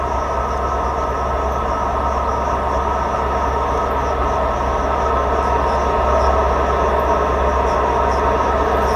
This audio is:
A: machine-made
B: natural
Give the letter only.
B